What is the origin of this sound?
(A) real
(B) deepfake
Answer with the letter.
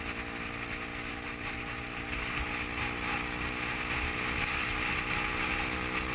A